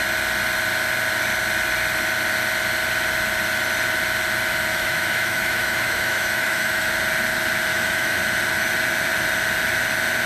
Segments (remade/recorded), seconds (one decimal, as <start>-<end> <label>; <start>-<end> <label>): 0.0-4.7 recorded; 4.7-6.9 remade; 6.9-7.7 recorded; 7.7-8.2 remade; 8.2-10.3 recorded